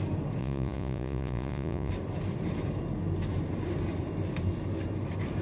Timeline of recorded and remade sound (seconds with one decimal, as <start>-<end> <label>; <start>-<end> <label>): 0.0-0.4 recorded; 0.4-1.9 remade; 1.9-5.4 recorded